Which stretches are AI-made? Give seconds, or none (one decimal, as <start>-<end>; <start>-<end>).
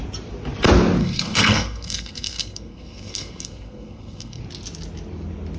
1.0-4.4